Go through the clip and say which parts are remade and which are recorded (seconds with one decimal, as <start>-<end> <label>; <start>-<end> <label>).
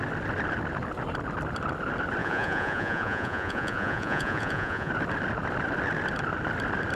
0.0-2.2 recorded; 2.2-4.9 remade; 4.9-6.9 recorded